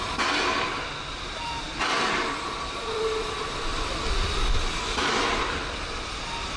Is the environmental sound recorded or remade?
remade